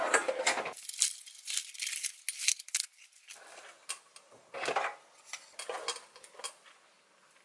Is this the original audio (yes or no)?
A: yes